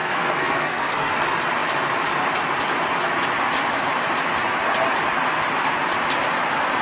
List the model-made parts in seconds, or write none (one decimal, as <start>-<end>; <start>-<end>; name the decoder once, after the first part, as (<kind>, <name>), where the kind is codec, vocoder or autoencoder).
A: 0.0-1.1 (codec, SNAC)